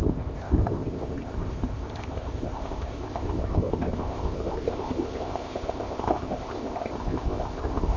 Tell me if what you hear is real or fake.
fake